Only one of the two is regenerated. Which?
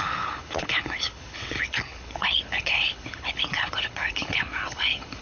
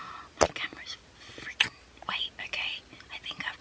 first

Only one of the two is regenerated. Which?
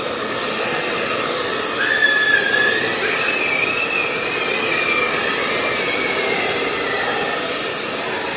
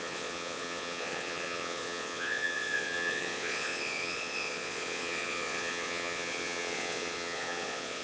second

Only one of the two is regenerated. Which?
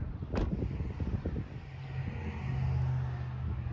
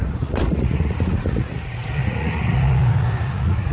second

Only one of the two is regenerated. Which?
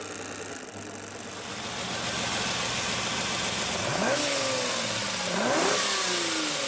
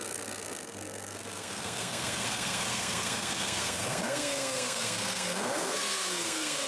second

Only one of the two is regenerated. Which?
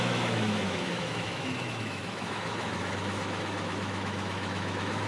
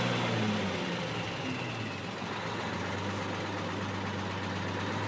first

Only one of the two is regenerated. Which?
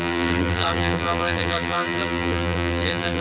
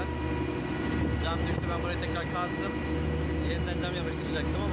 first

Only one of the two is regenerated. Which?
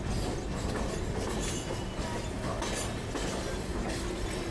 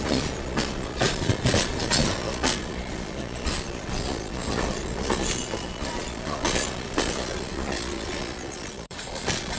second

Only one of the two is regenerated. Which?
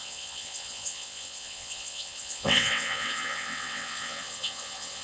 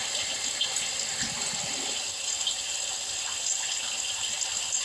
first